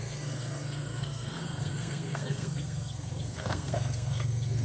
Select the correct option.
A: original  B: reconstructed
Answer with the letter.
B